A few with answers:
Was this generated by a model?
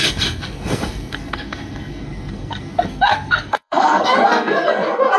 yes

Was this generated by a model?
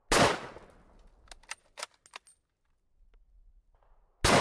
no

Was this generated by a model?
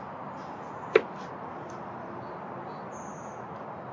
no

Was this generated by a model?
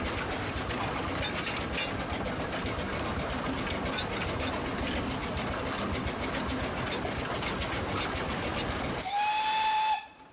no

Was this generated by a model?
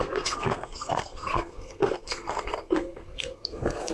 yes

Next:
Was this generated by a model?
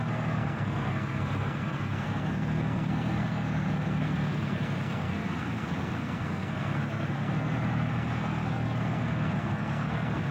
yes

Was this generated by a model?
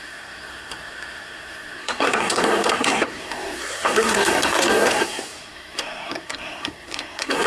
yes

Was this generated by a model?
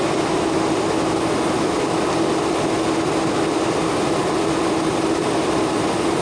no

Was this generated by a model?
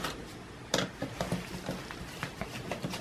no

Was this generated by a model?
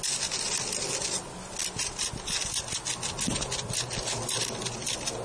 no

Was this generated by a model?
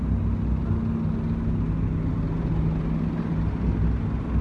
no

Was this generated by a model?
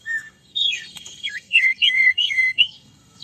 yes